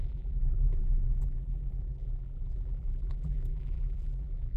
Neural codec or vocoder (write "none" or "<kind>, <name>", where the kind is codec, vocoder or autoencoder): vocoder, BigVGAN v2